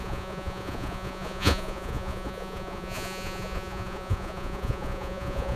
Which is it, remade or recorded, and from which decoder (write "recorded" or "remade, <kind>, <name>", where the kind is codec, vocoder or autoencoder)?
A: remade, vocoder, Vocos